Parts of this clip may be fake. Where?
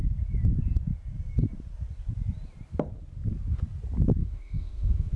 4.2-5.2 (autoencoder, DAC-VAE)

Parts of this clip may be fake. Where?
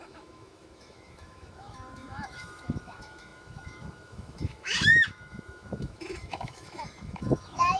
0.0-7.8 (autoencoder, DAC-VAE)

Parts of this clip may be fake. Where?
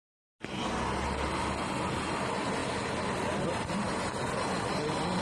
none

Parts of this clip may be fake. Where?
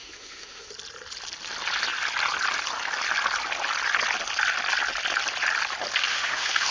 0.0-0.7 (autoencoder, DAC-VAE); 6.1-6.7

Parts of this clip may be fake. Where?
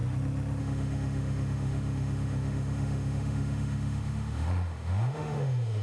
0.6-5.8 (autoencoder, DAC-VAE)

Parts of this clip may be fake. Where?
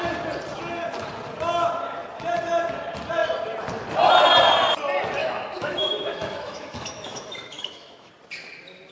5.2-8.1 (autoencoder, DAC-VAE)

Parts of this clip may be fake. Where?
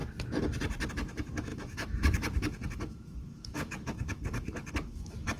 0.9-5.4 (autoencoder, DAC-VAE)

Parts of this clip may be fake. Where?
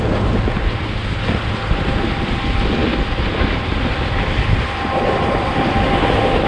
none